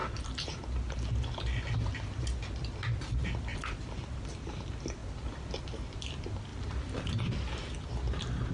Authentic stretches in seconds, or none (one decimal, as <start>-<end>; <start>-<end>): 0.0-3.5; 4.1-5.0; 5.6-6.5; 7.5-8.5